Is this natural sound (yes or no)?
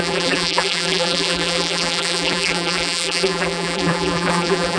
no